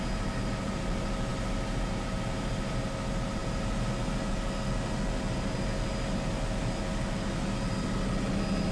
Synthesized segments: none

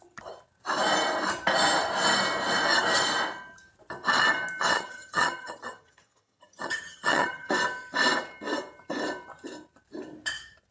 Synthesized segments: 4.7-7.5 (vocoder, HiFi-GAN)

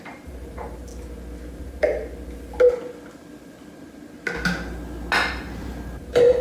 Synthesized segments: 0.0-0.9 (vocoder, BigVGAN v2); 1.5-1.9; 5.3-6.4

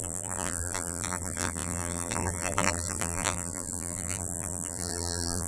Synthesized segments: 0.0-5.5 (vocoder, BigVGAN v2)

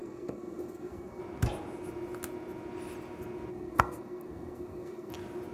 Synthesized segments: 0.0-1.2 (codec, SNAC); 3.5-5.1

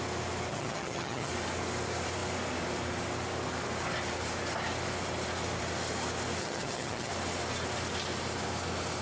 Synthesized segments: 0.5-1.3 (vocoder, HiFi-GAN); 6.4-7.1

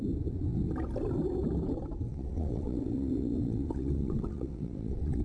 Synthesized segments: 2.1-5.2 (vocoder, WaveNeXt)